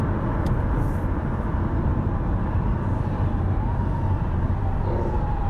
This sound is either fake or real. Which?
real